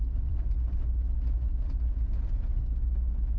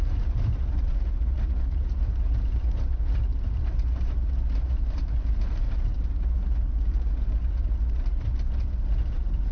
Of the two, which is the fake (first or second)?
second